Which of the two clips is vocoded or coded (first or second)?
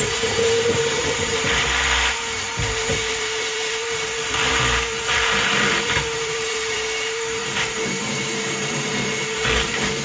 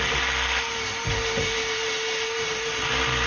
first